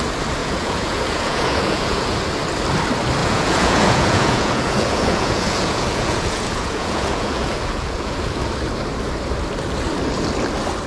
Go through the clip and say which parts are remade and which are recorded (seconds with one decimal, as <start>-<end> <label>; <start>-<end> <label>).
0.0-0.4 recorded; 0.4-2.2 remade; 2.2-3.2 recorded; 3.2-8.4 remade; 8.4-10.9 recorded